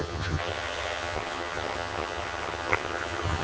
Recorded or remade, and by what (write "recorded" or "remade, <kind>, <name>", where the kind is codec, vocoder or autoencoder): remade, vocoder, HiFi-GAN